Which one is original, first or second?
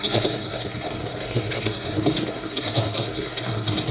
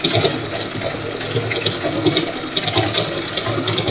second